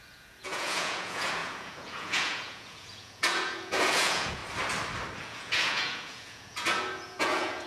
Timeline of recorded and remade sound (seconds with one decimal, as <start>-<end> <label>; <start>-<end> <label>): 0.0-4.4 remade; 4.4-5.2 recorded; 5.2-7.7 remade